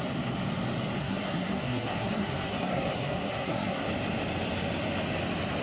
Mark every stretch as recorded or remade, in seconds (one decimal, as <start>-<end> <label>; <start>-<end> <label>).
0.0-1.0 recorded; 1.0-3.9 remade; 3.9-5.6 recorded